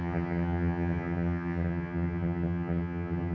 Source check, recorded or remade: remade